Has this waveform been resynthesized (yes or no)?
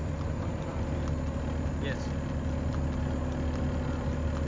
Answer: no